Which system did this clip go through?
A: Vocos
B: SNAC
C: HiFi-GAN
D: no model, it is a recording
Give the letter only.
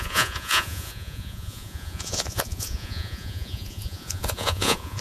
A